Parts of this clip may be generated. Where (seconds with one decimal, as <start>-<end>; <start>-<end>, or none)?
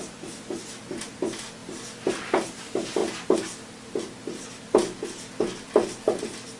none